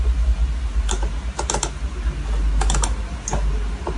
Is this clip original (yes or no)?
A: yes